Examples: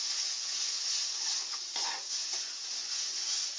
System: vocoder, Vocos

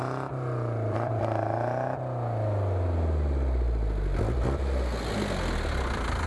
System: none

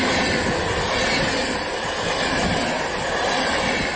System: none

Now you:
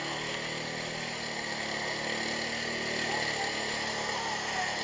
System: none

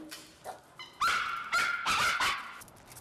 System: none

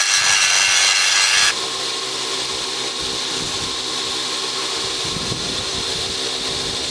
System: none